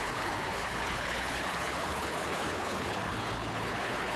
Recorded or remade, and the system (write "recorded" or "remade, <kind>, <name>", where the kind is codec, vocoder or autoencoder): remade, codec, HILCodec